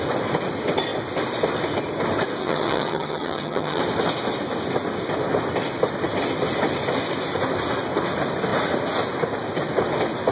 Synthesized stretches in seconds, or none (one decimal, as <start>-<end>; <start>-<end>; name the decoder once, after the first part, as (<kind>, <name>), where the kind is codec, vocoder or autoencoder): 2.4-3.8 (vocoder, HiFi-GAN)